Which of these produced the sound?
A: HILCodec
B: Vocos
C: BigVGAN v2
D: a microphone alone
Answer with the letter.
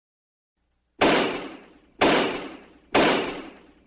D